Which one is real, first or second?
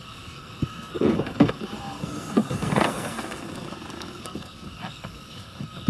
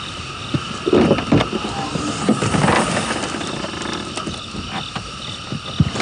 second